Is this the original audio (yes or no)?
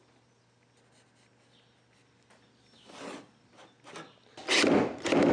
yes